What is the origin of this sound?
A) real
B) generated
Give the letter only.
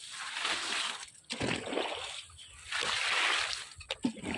A